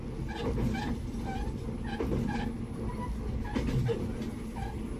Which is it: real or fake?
real